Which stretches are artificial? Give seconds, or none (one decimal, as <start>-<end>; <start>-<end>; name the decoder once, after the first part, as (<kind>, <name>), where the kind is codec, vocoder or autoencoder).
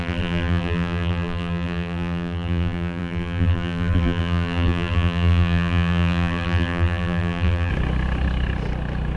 0.0-7.7 (vocoder, BigVGAN v2)